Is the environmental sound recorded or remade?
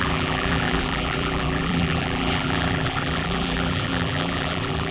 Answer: remade